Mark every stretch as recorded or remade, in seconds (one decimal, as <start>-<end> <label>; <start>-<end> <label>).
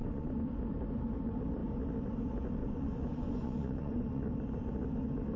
0.0-0.6 remade; 0.6-2.6 recorded; 2.6-4.2 remade; 4.2-5.4 recorded